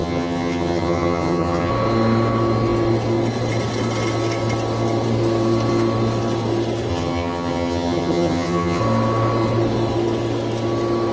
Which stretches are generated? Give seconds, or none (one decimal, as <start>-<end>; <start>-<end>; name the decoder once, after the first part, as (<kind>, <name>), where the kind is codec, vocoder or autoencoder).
0.0-1.7 (vocoder, HiFi-GAN); 6.9-8.8